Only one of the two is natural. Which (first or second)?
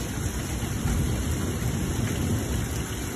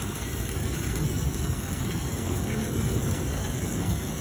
first